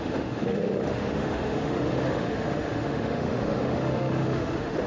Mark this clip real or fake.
fake